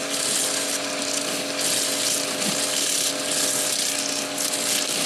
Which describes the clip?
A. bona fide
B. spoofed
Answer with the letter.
A